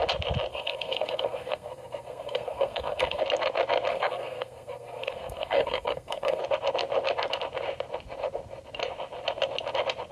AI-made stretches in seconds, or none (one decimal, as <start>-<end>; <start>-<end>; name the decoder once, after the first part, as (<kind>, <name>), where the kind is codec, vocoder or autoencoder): 0.5-3.2 (codec, SNAC); 3.9-6.4